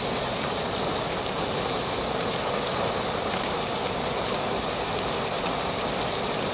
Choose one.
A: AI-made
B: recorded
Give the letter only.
B